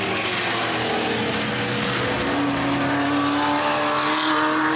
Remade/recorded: recorded